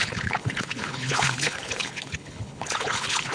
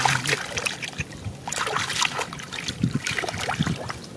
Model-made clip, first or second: first